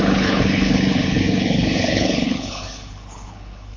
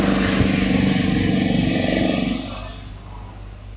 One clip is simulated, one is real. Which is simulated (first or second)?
first